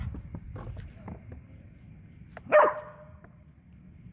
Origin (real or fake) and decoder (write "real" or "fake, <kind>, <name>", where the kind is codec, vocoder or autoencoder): real